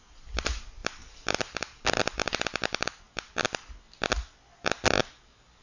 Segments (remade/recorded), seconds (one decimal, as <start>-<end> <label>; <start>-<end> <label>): 0.0-3.4 remade; 3.4-4.6 recorded; 4.6-5.6 remade